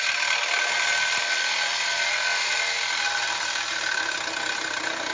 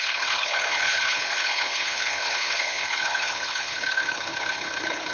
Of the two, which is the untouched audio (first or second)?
first